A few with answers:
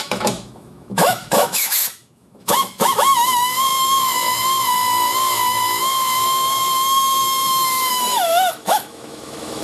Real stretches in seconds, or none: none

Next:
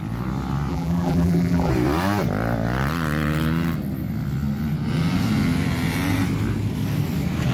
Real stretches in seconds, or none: 0.0-0.7; 1.7-7.5

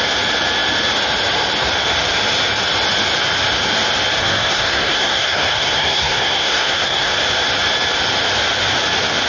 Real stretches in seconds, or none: 0.0-4.2; 7.1-9.3

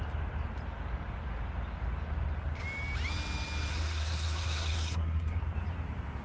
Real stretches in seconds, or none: 0.0-3.7; 5.4-6.2

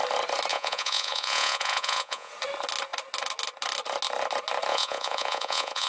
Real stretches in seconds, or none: 0.0-0.5; 2.3-4.7

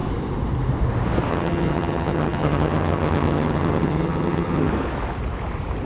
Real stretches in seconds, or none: 0.0-1.3; 4.7-5.9